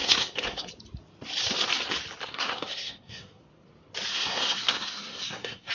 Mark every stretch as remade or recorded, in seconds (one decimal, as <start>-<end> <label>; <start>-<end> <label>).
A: 0.0-0.7 remade; 0.7-2.2 recorded; 2.2-3.4 remade; 3.4-4.1 recorded; 4.1-5.7 remade